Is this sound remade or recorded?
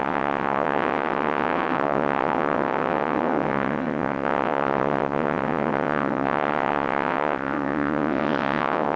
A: remade